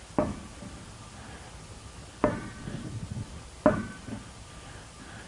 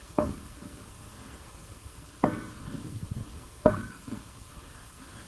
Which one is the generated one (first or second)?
second